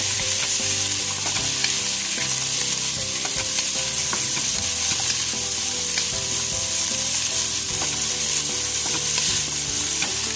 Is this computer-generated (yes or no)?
yes